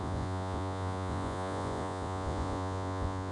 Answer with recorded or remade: remade